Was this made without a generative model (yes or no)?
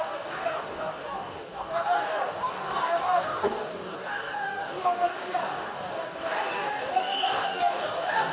no